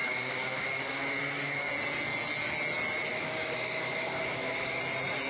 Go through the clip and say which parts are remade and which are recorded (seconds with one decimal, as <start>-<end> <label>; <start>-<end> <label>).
0.0-1.7 remade; 1.7-3.1 recorded; 3.1-4.8 remade; 4.8-5.3 recorded